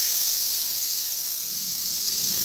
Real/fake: fake